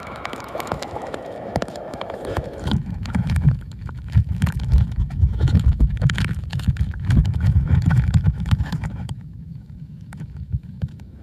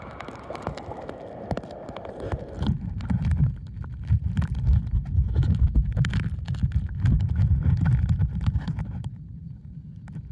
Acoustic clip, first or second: second